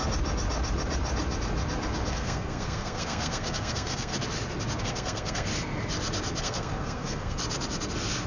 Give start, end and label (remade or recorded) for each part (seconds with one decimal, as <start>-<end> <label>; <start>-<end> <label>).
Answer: 0.0-2.1 recorded; 2.1-4.1 remade; 4.1-4.8 recorded; 4.8-5.5 remade; 5.5-6.4 recorded; 6.4-7.4 remade; 7.4-8.3 recorded